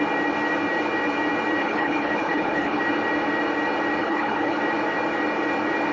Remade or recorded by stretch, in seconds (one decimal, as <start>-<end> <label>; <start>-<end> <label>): 0.0-1.6 recorded; 1.6-2.8 remade; 2.8-4.0 recorded; 4.0-4.6 remade; 4.6-5.9 recorded